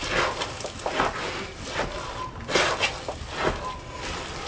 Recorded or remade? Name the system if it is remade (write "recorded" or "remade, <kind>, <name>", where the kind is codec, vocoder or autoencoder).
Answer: recorded